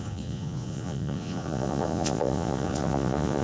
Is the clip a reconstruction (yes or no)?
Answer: yes